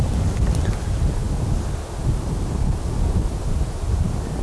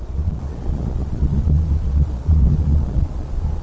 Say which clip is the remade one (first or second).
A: second